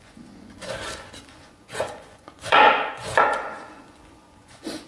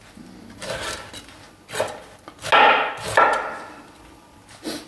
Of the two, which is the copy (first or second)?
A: first